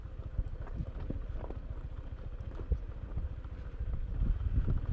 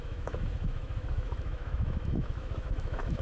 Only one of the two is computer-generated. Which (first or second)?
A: second